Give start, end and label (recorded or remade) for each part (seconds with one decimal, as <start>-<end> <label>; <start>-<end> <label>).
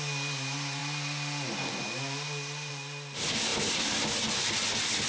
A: 0.0-5.1 recorded